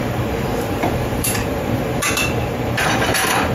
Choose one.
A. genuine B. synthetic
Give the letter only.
B